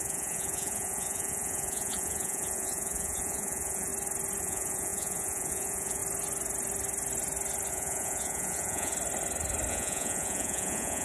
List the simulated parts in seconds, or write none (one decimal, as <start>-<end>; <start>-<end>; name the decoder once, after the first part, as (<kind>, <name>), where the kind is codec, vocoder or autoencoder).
0.0-3.9 (vocoder, Vocos); 4.4-6.0; 7.7-8.9; 9.7-11.0